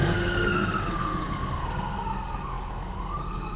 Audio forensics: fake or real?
fake